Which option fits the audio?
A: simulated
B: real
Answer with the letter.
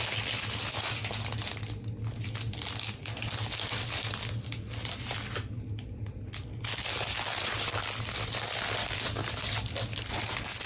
B